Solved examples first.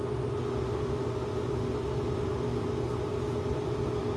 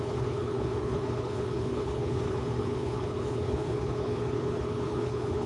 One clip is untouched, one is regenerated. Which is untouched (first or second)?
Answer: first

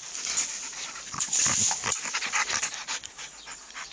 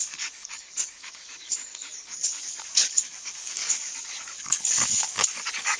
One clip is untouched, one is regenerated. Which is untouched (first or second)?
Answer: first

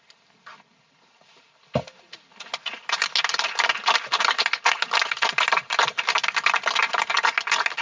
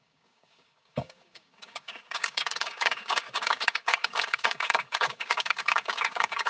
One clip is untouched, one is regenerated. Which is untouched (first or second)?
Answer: first